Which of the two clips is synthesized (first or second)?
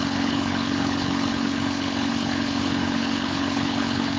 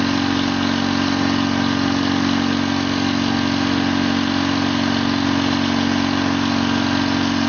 first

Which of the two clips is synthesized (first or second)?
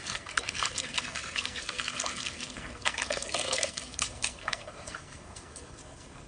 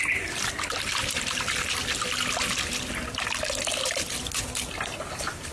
first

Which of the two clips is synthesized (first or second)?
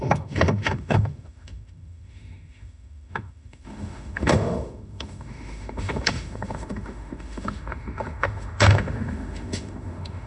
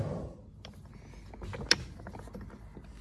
first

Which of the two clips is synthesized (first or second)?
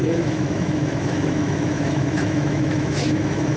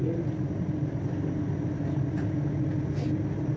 first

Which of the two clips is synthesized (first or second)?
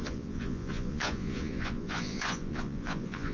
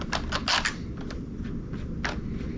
first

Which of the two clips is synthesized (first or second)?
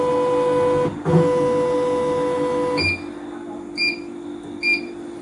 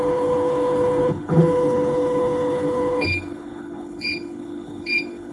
second